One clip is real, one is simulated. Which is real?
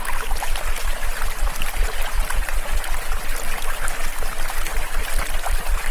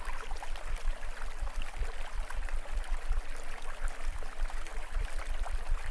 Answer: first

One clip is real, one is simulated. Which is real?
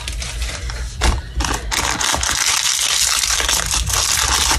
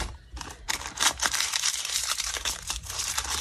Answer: first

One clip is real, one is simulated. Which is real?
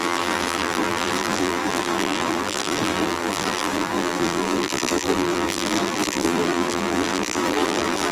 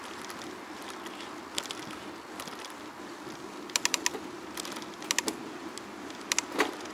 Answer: second